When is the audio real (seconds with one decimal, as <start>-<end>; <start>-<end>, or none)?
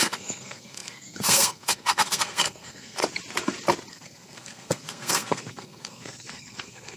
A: 3.0-3.9